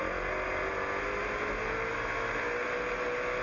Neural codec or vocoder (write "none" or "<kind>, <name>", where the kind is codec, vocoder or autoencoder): none